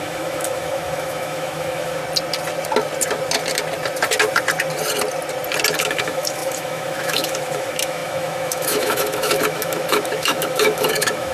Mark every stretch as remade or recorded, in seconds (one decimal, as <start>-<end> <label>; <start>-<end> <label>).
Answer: 0.0-2.0 remade; 2.0-5.8 recorded; 5.8-11.3 remade